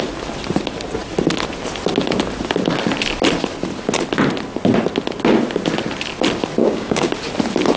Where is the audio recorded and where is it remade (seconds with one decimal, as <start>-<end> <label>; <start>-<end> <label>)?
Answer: 0.0-6.6 recorded; 6.6-7.1 remade; 7.1-7.8 recorded